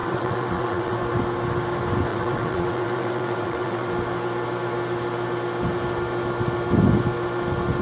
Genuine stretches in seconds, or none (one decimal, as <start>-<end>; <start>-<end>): 1.0-2.1; 3.9-7.8